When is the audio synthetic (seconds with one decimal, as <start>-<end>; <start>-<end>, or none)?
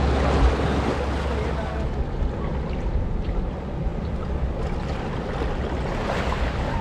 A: none